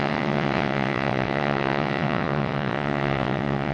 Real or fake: fake